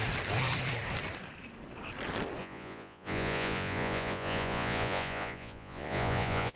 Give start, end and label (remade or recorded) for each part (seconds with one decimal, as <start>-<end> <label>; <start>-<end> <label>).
0.0-2.4 recorded; 2.4-6.6 remade